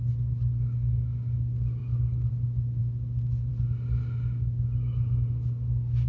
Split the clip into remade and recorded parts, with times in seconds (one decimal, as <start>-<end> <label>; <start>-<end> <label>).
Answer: 0.0-6.1 recorded